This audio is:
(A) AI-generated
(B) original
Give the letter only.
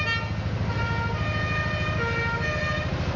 B